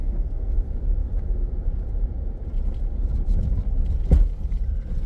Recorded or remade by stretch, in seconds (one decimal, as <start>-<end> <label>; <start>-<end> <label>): 0.0-0.5 remade; 0.5-5.1 recorded

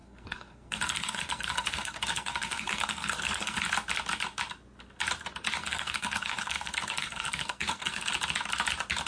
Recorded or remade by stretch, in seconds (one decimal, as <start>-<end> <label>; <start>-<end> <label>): 0.0-3.6 remade; 3.6-5.6 recorded; 5.6-8.1 remade; 8.1-9.1 recorded

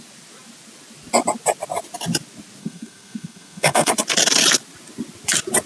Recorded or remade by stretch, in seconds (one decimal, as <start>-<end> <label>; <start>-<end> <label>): 0.0-2.6 recorded; 2.6-3.9 remade; 3.9-5.7 recorded

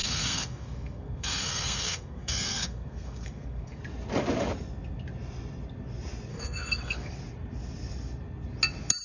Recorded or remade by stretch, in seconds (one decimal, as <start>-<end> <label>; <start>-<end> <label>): 0.0-3.8 remade; 3.8-6.3 recorded; 6.3-7.1 remade; 7.1-9.0 recorded

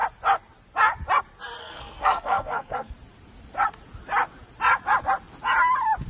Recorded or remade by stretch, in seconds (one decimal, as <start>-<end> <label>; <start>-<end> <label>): 0.0-1.6 recorded; 1.6-2.9 remade; 2.9-6.1 recorded

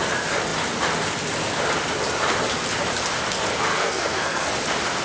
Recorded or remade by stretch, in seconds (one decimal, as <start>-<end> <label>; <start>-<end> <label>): 0.0-3.7 recorded; 3.7-4.5 remade; 4.5-5.0 recorded

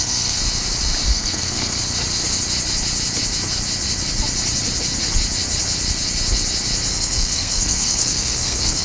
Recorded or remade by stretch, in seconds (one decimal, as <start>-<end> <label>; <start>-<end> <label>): 0.0-0.4 remade; 0.4-1.1 recorded; 1.1-1.8 remade; 1.8-6.9 recorded; 6.9-8.8 remade

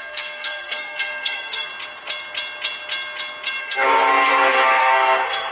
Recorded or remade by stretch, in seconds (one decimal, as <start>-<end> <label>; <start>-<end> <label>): 0.0-1.7 remade; 1.7-3.6 recorded; 3.6-5.5 remade